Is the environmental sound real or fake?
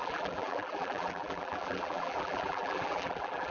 fake